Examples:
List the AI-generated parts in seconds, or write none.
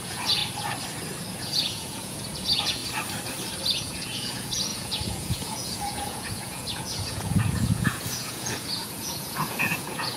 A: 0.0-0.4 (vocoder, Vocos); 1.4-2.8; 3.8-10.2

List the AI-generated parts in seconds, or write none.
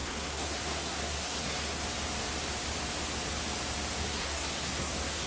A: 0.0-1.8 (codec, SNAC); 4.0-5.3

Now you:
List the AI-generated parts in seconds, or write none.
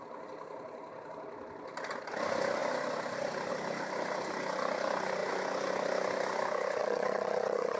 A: 6.8-7.8 (vocoder, WaveNeXt)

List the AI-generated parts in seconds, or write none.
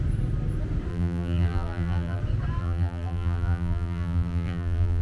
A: 0.9-2.2 (vocoder, BigVGAN v2); 2.6-5.0